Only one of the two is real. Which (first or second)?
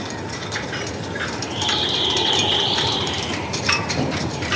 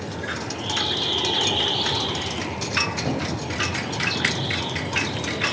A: second